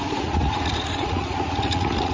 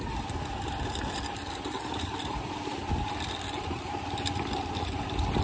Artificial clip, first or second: first